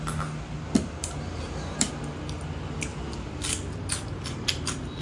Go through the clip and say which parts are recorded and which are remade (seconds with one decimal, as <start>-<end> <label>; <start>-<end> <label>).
0.0-1.0 recorded; 1.0-1.9 remade; 1.9-5.0 recorded